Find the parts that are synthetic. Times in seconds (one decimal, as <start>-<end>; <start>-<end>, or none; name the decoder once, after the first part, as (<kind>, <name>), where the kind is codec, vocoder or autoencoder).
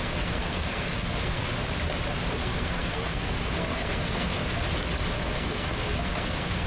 0.0-1.5 (codec, SNAC); 2.4-4.4; 5.1-6.7